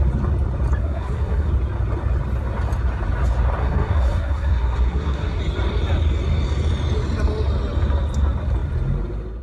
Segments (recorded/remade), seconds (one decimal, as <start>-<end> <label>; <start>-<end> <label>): 0.0-0.8 recorded; 0.8-1.5 remade; 1.5-3.6 recorded; 3.6-5.4 remade; 5.4-9.4 recorded